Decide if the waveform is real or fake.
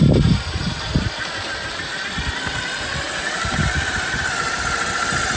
real